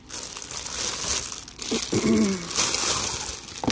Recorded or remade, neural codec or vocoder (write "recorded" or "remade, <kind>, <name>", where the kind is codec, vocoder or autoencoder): recorded